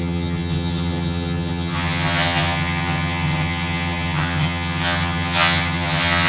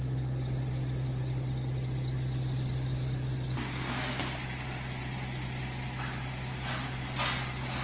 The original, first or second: second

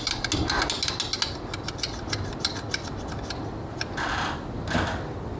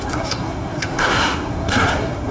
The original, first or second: first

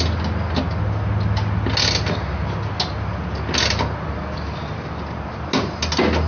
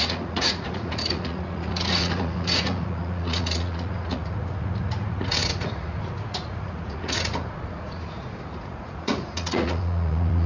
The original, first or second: first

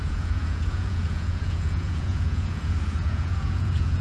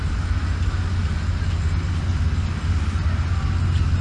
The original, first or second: second